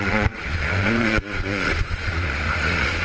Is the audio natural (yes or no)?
no